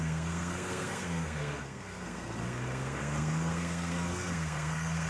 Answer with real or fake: fake